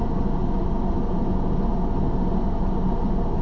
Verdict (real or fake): real